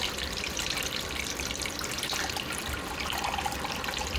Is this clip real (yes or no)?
yes